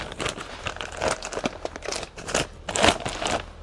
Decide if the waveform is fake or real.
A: real